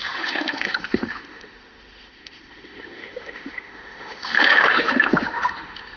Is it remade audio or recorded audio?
remade